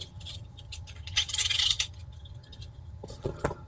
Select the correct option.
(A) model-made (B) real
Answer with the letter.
A